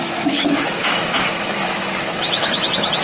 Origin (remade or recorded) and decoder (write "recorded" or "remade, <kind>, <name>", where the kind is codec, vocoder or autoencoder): remade, autoencoder, DAC-VAE